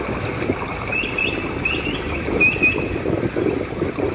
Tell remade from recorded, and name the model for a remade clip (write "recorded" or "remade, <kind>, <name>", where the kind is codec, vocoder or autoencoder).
recorded